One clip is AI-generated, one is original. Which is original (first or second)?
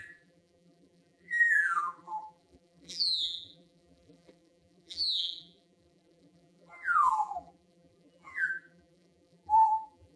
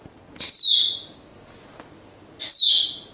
second